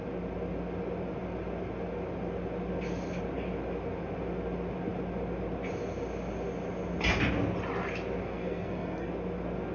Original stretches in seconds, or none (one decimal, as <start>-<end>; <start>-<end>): 0.0-8.2; 9.1-9.7